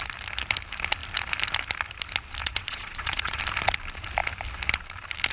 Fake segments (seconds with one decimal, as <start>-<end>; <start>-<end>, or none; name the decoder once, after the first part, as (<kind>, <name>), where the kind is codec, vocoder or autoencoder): 2.4-3.4 (vocoder, Vocos)

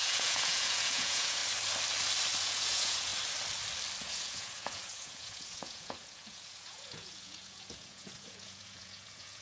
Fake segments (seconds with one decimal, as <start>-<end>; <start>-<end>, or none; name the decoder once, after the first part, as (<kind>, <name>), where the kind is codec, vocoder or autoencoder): 0.0-1.4 (vocoder, Vocos); 2.4-3.1; 4.0-9.4

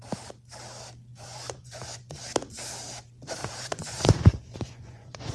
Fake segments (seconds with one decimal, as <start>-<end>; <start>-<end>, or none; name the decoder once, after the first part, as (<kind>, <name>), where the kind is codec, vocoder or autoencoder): 1.1-2.2 (vocoder, Vocos); 3.4-5.3

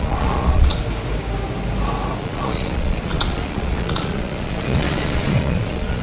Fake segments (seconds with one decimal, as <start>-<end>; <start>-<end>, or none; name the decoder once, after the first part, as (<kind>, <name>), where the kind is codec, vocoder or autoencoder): 0.0-0.8 (vocoder, Vocos); 2.2-6.0